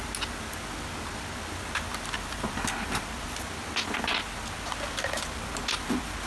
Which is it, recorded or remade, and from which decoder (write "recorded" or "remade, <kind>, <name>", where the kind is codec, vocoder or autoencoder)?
recorded